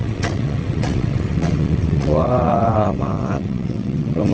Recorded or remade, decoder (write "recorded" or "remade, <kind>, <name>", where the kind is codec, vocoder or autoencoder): remade, vocoder, WaveNeXt